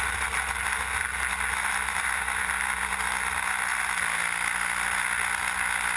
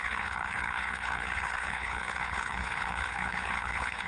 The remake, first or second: second